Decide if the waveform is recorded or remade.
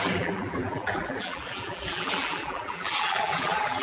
remade